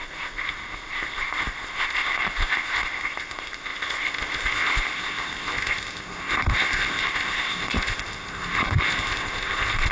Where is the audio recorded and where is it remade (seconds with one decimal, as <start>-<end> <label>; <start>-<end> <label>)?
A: 0.0-9.9 remade